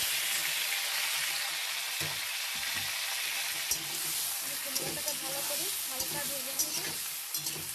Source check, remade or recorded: recorded